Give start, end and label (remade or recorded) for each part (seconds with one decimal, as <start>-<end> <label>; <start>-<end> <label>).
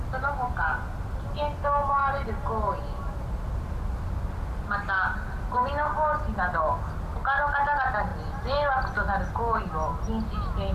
0.0-10.7 recorded